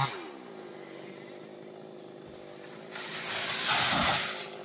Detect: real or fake real